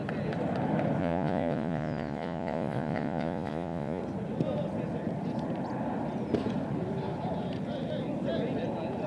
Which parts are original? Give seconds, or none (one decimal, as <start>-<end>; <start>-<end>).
0.0-1.0; 4.0-9.1